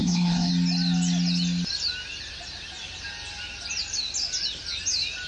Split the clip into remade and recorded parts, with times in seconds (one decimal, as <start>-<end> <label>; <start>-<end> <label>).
0.0-0.5 remade; 0.5-5.3 recorded